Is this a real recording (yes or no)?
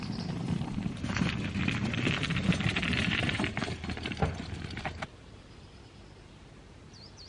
no